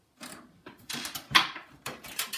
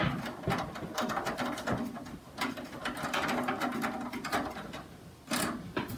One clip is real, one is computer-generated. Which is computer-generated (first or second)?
first